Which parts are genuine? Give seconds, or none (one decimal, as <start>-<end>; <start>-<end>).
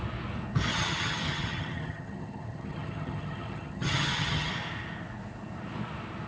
0.0-0.7; 4.5-6.3